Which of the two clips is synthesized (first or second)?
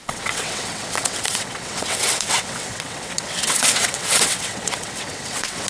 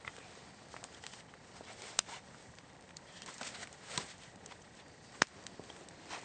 first